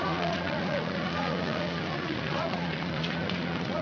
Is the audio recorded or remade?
remade